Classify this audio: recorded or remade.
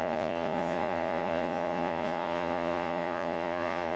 remade